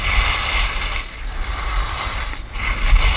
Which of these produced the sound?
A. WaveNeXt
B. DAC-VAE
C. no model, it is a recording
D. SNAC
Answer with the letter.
C